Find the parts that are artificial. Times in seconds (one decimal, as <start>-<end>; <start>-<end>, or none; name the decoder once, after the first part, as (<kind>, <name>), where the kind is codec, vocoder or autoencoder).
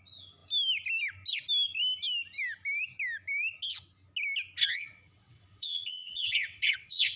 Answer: 4.6-7.2 (vocoder, WaveNeXt)